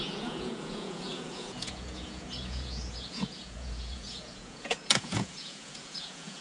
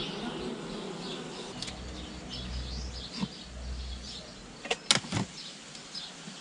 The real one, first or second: second